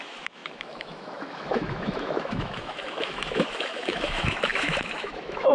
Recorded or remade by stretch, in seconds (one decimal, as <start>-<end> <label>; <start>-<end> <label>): 0.0-5.5 remade